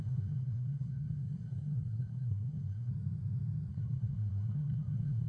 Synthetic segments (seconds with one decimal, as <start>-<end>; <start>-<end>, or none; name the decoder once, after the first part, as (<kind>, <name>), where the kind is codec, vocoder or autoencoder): 0.0-2.9 (codec, SNAC); 3.7-5.3